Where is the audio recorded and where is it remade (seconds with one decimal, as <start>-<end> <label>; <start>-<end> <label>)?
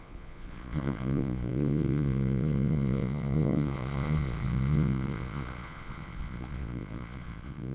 0.0-7.7 remade